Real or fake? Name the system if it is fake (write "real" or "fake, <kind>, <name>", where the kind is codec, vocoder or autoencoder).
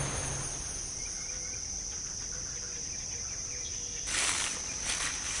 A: real